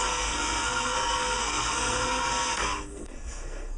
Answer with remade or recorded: remade